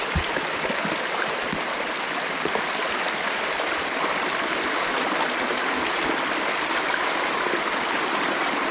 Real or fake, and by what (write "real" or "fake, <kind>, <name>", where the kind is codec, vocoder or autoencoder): real